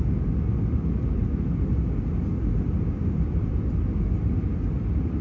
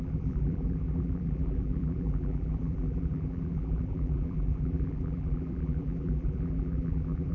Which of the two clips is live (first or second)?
first